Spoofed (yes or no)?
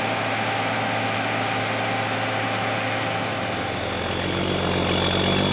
no